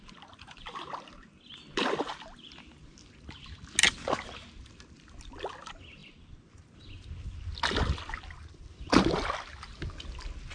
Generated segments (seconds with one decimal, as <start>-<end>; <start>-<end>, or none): none